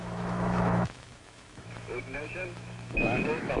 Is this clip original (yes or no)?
no